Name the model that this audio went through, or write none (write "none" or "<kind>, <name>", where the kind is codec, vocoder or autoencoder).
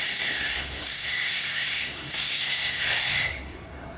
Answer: codec, SNAC